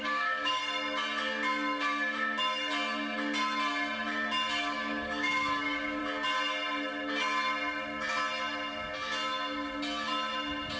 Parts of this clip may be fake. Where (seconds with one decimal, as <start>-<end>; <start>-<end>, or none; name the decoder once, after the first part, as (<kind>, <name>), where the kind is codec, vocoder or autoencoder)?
0.0-0.6 (codec, DAC); 4.6-6.0